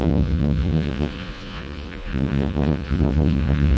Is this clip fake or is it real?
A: fake